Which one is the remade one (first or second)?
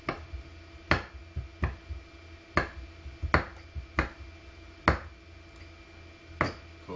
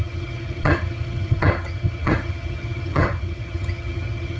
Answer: second